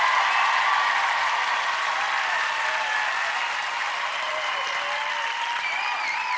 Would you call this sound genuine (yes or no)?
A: no